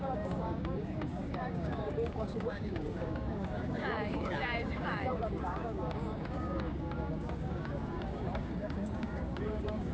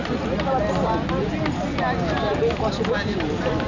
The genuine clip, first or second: second